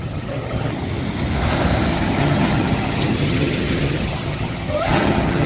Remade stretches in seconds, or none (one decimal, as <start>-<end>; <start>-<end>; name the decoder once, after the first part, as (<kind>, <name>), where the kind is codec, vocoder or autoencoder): 0.0-0.7 (vocoder, HiFi-GAN); 1.9-5.5